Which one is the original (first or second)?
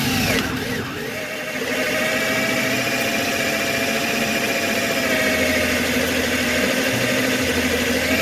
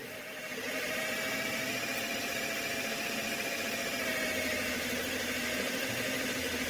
first